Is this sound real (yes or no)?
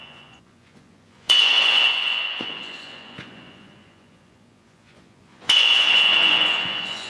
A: no